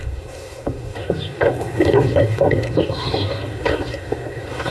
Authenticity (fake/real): fake